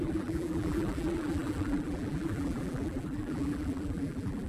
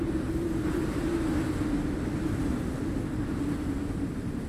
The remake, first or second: first